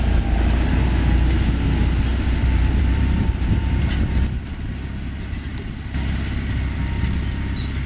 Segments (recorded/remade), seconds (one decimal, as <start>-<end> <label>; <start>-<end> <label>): 0.0-2.1 recorded; 2.1-3.8 remade; 3.8-7.9 recorded